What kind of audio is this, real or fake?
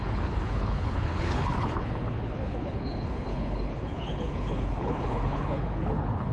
fake